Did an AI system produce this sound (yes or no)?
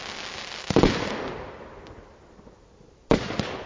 no